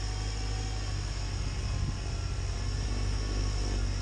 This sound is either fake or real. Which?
real